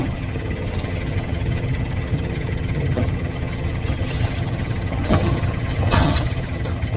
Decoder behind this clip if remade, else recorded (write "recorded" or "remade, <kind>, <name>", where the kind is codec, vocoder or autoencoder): remade, vocoder, HiFi-GAN